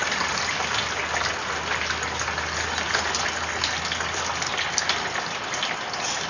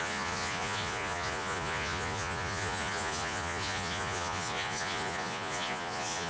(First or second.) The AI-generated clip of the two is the second